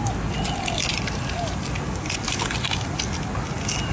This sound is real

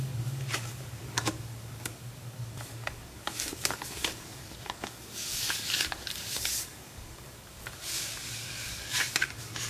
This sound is fake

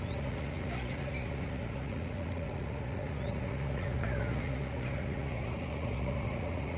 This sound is fake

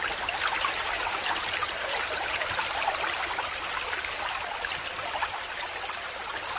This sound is real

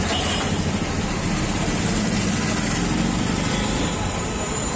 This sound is real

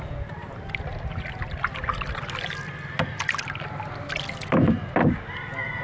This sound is real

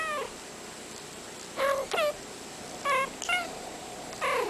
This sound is real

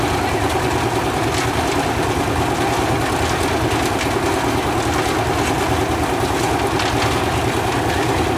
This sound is real